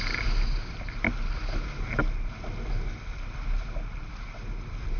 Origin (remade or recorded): recorded